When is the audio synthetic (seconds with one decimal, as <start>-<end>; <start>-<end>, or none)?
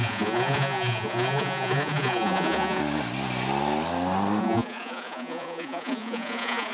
0.0-2.8; 4.4-6.7